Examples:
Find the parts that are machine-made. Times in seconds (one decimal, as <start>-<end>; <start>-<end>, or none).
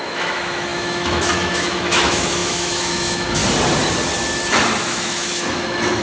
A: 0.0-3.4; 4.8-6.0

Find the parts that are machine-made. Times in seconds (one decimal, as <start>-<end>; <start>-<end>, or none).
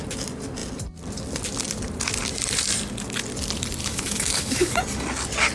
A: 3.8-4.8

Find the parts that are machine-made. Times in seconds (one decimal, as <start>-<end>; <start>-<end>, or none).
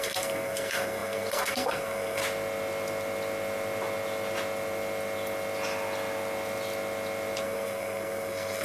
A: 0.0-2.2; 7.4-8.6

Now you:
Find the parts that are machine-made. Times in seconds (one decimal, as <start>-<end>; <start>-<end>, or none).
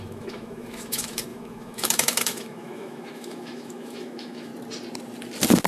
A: 0.0-4.5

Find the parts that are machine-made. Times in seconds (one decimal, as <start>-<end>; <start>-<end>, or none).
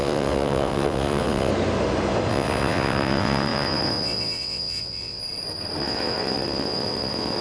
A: 0.0-1.5; 2.3-5.2; 5.8-7.4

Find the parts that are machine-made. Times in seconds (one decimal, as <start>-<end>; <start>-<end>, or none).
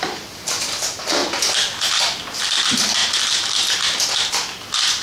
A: none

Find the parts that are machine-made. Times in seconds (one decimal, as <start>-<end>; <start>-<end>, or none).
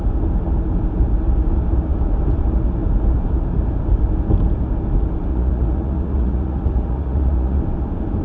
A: 5.3-7.6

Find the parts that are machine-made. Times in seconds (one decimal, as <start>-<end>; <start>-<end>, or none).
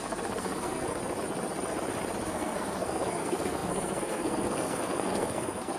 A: 0.0-1.0; 2.2-5.8